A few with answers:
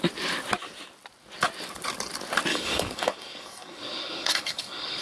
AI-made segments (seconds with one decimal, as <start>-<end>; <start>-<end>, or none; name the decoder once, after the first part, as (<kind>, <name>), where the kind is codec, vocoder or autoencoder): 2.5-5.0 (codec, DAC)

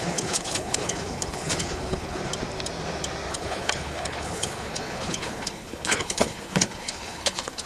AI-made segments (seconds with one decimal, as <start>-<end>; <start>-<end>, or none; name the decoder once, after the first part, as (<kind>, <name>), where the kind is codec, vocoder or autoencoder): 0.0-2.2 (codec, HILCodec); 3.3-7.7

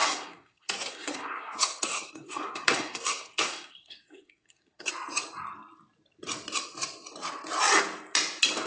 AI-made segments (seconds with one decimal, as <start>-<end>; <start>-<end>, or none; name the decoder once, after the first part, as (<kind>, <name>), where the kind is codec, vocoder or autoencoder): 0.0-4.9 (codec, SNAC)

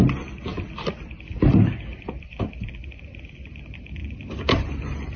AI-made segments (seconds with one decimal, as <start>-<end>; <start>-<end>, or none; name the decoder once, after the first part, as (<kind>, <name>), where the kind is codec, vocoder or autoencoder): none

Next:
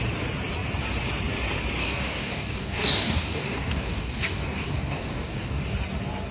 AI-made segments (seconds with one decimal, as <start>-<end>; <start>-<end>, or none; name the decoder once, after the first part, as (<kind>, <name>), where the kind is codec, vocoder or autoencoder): 1.8-5.6 (codec, DAC)

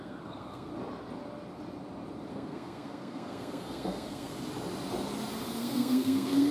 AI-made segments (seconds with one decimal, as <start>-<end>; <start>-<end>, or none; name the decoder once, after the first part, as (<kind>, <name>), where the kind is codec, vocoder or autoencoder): 0.0-0.7 (codec, SNAC); 2.3-4.3; 5.6-6.5

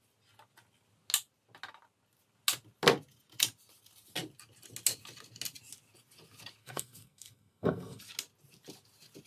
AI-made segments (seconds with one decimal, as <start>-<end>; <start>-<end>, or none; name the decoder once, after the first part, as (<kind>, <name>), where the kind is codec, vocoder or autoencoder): 6.6-8.0 (codec, SNAC)

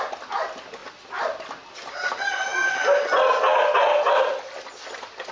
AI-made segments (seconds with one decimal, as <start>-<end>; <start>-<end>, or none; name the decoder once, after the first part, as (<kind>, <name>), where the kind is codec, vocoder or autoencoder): none